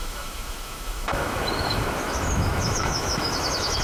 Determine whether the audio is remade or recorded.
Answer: remade